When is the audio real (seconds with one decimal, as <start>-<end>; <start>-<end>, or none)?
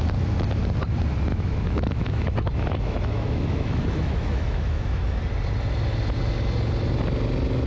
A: 0.0-1.3; 5.2-7.7